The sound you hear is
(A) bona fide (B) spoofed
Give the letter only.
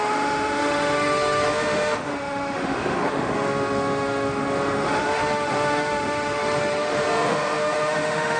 B